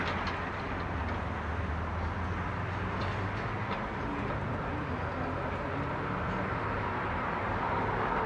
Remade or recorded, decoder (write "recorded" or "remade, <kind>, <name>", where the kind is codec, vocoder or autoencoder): recorded